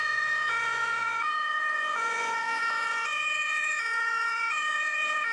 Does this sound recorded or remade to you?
remade